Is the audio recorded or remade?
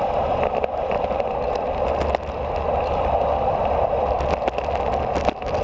recorded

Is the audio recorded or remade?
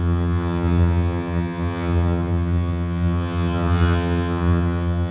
remade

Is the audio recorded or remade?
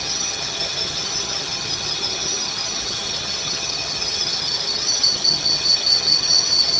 remade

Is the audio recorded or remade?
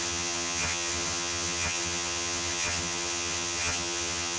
remade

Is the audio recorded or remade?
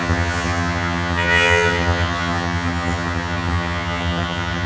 remade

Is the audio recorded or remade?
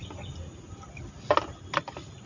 recorded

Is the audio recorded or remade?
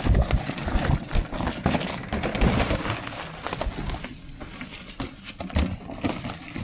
recorded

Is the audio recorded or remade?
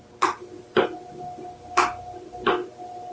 recorded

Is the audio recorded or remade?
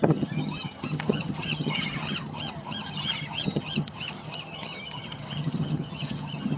remade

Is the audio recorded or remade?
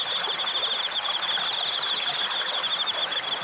recorded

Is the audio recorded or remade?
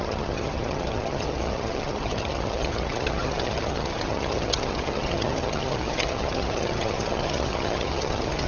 remade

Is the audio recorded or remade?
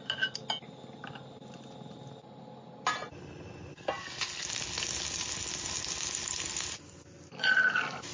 recorded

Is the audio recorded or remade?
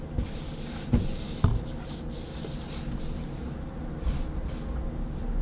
recorded